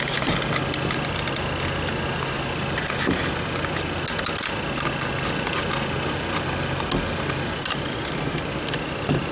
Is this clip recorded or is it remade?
recorded